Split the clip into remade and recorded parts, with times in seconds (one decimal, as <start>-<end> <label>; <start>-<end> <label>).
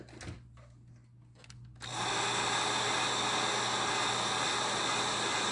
0.0-5.5 recorded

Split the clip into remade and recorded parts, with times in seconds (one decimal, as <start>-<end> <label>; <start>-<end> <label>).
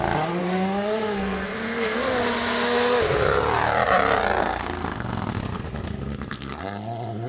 0.0-0.4 recorded; 0.4-2.0 remade; 2.0-4.4 recorded; 4.4-6.6 remade; 6.6-7.3 recorded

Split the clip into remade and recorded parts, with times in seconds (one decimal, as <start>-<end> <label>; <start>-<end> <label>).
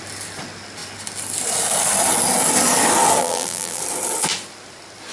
0.0-3.2 recorded; 3.2-3.8 remade; 3.8-5.1 recorded